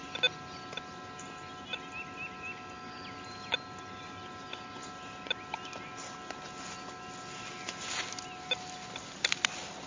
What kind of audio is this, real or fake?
real